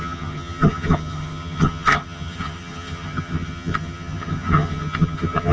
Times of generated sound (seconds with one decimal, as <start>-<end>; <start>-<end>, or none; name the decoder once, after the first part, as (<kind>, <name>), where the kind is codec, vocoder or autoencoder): 0.0-5.5 (vocoder, HiFi-GAN)